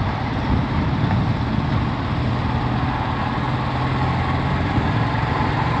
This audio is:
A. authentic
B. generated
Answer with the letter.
A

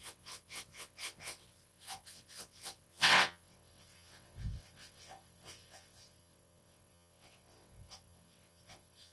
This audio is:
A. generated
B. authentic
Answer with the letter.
A